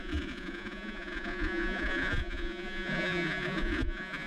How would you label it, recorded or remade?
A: remade